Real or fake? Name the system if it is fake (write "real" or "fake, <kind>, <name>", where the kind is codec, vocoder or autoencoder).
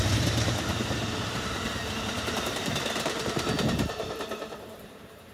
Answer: fake, vocoder, BigVGAN v2